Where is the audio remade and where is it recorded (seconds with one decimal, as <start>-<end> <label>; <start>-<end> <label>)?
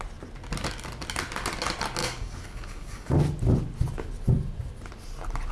0.0-2.0 recorded; 2.0-3.1 remade; 3.1-5.5 recorded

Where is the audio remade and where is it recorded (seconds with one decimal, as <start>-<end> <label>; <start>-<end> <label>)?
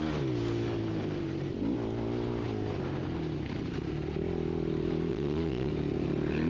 0.0-5.1 recorded; 5.1-5.7 remade; 5.7-6.5 recorded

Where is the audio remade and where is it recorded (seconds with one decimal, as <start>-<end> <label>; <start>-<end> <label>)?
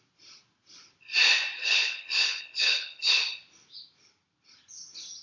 0.0-1.6 recorded; 1.6-3.2 remade; 3.2-5.2 recorded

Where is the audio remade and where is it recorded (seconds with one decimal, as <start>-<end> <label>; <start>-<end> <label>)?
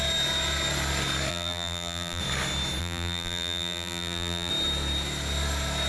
0.0-1.3 recorded; 1.3-2.2 remade; 2.2-2.8 recorded; 2.8-4.5 remade; 4.5-5.9 recorded